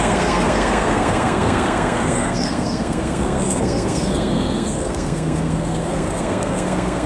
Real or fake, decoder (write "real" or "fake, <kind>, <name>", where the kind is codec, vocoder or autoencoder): fake, codec, SNAC